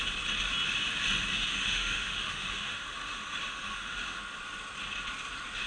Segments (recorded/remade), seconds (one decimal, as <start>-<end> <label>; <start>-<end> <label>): 0.0-1.3 recorded; 1.3-4.2 remade; 4.2-5.7 recorded